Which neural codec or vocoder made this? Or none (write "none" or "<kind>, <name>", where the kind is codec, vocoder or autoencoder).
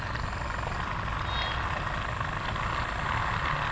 none